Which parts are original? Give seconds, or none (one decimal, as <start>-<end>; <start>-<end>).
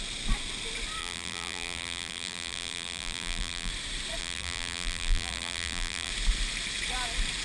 0.0-1.0; 3.7-4.2; 6.1-7.4